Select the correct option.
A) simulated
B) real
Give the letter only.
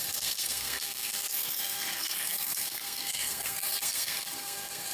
A